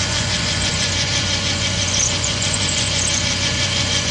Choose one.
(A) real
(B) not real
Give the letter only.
B